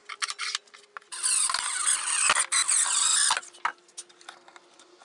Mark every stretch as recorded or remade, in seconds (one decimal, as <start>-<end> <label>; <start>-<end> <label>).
0.0-5.0 recorded